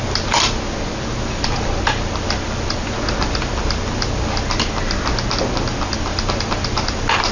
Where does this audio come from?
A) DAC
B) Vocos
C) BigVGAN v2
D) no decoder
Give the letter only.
D